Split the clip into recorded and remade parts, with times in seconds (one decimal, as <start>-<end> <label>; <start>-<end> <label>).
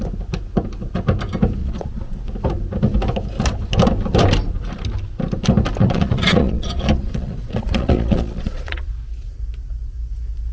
0.0-1.6 recorded; 1.6-2.3 remade; 2.3-5.8 recorded; 5.8-8.9 remade; 8.9-10.5 recorded